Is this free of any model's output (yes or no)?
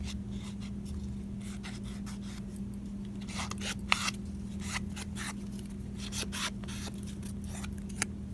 yes